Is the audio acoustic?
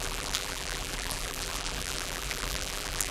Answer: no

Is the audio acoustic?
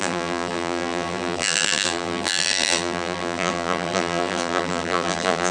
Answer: no